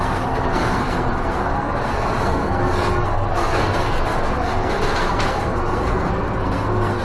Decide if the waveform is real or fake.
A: fake